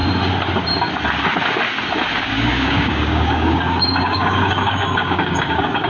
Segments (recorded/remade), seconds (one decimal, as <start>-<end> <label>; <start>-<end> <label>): 0.0-2.2 recorded; 2.2-5.9 remade